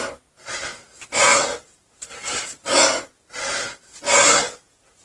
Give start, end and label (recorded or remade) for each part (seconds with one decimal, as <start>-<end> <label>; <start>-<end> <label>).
0.0-5.0 recorded